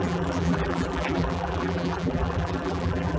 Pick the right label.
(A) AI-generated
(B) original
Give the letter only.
A